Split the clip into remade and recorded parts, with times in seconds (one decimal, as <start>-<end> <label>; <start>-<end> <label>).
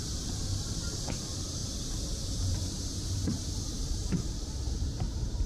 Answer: 0.0-0.4 remade; 0.4-1.2 recorded; 1.2-1.6 remade; 1.6-2.6 recorded; 2.6-5.5 remade